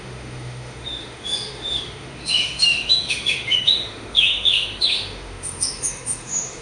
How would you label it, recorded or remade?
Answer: remade